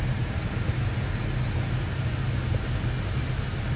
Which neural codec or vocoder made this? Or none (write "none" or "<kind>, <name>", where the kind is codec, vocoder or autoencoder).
none